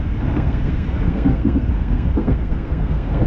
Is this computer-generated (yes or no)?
yes